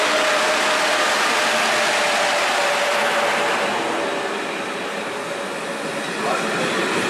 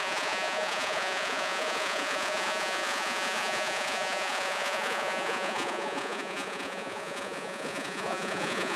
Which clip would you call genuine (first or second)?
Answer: first